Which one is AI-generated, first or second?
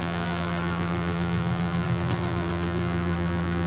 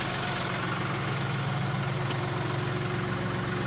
first